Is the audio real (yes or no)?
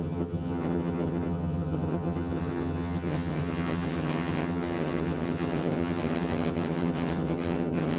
no